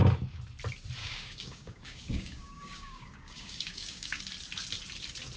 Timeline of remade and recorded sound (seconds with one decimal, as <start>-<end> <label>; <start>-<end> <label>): 0.0-1.0 recorded; 1.0-4.2 remade; 4.2-5.4 recorded